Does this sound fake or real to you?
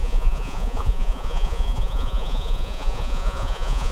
fake